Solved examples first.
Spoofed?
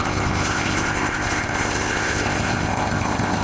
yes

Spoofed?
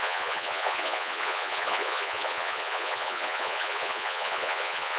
yes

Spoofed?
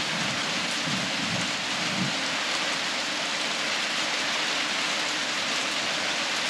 no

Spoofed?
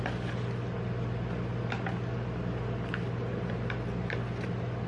no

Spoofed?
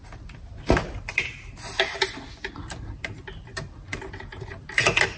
no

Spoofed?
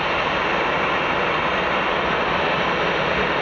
no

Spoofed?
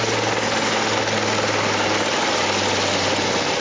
no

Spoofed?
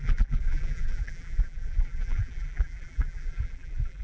yes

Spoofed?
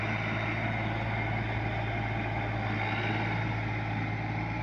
no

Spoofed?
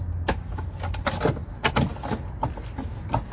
no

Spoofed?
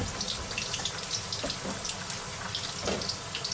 no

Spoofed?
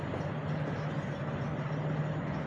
no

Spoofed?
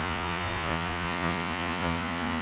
yes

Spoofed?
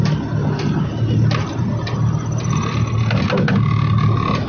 no